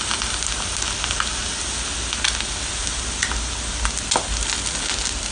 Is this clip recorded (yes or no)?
yes